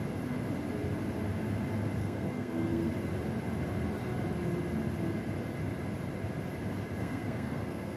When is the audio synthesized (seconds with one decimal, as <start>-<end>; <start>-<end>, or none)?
2.0-2.9; 7.0-8.0